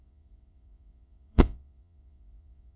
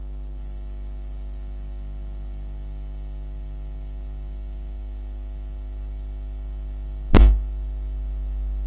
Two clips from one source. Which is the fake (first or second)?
first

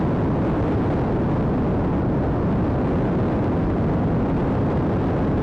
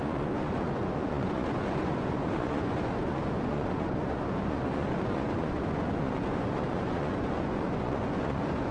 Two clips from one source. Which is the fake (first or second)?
second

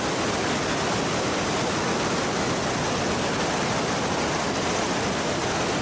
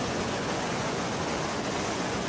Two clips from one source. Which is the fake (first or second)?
second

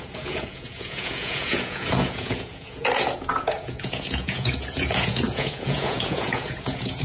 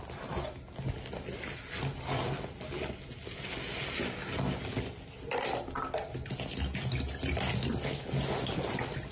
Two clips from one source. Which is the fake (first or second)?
first